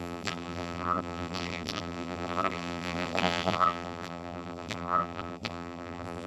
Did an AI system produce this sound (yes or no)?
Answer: yes